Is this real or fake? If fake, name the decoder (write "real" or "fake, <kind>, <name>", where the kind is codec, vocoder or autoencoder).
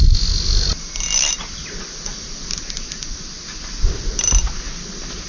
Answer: real